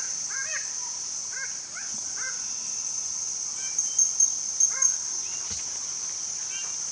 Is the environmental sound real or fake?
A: real